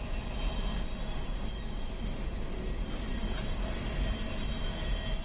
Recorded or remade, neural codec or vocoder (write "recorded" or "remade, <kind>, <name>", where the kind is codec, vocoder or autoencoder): recorded